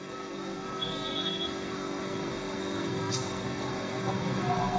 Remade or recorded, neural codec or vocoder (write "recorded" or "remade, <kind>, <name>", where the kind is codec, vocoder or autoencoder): remade, codec, SNAC